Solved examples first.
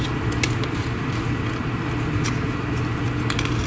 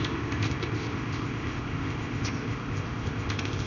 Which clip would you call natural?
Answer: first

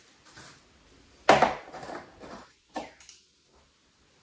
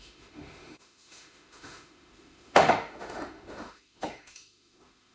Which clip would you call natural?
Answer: first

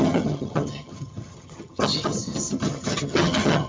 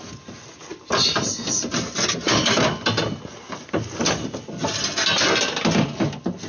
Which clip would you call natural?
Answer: second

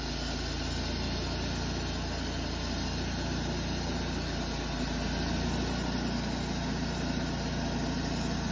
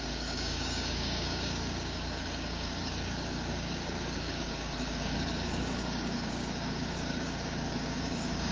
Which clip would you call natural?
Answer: first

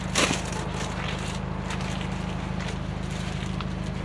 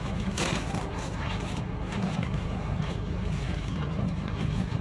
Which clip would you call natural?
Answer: first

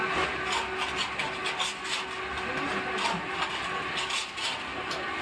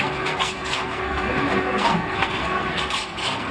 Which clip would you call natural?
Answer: first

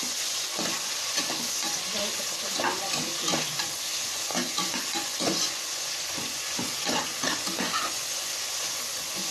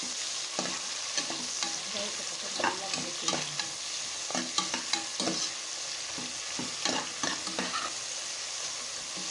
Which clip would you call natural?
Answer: second